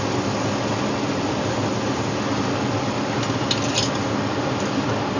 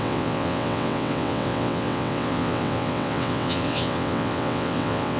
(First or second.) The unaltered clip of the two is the first